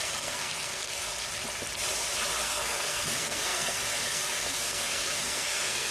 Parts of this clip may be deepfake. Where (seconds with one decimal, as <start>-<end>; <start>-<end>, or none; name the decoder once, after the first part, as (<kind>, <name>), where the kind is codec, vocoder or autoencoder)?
0.0-1.1 (codec, SNAC); 2.4-5.9